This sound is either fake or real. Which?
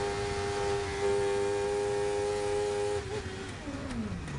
real